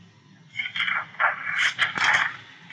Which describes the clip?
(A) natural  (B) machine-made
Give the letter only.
A